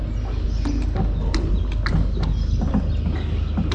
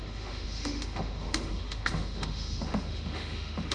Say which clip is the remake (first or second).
second